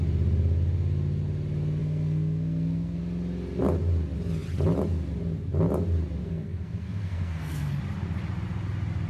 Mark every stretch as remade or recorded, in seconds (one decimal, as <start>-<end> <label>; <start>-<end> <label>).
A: 0.0-1.8 recorded; 1.8-3.0 remade; 3.0-6.2 recorded; 6.2-7.8 remade; 7.8-9.1 recorded